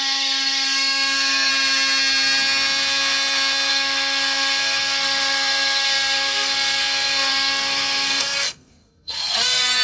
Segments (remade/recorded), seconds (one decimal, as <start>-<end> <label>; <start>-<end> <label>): 0.0-1.5 remade; 1.5-3.7 recorded; 3.7-9.8 remade